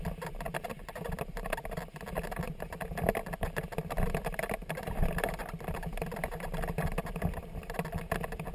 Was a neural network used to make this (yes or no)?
yes